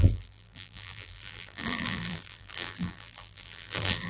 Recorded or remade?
remade